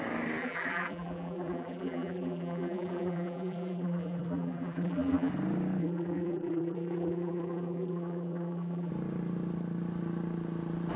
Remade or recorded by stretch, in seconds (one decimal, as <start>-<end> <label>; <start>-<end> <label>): 0.0-0.4 recorded; 0.4-5.3 remade; 5.3-5.8 recorded; 5.8-8.9 remade; 8.9-11.0 recorded